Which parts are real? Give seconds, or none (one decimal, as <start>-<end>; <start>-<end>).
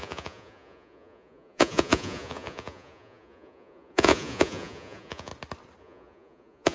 5.3-5.8